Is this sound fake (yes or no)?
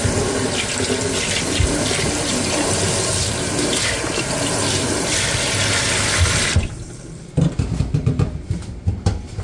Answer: yes